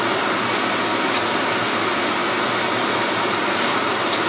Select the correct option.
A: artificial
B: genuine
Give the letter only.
B